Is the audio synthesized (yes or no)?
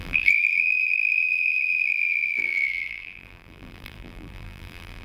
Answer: yes